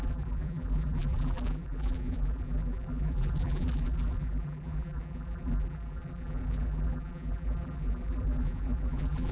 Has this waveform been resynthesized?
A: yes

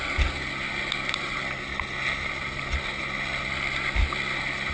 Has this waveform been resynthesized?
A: no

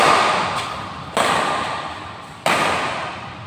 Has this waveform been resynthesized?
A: no